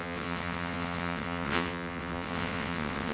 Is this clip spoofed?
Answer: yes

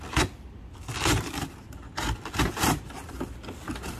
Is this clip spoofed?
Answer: no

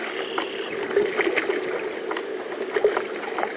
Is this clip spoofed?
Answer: no